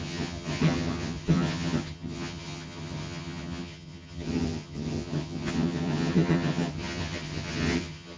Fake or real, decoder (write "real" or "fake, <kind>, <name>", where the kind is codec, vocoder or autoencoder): fake, vocoder, HiFi-GAN